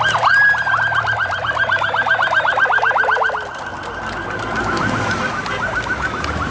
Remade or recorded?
recorded